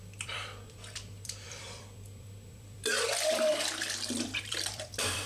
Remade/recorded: remade